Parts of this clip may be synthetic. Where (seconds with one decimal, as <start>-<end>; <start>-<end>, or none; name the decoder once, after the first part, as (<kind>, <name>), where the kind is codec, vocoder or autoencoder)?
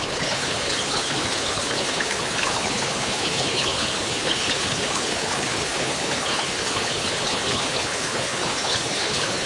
0.0-9.5 (codec, HILCodec)